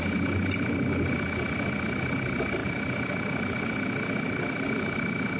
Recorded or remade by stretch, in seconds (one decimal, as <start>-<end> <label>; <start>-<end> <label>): 0.0-5.4 recorded